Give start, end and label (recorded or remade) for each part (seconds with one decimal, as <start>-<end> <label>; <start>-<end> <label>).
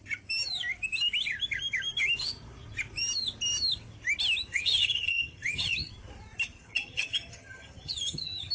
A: 0.0-4.5 recorded; 4.5-5.9 remade; 5.9-6.6 recorded; 6.6-8.5 remade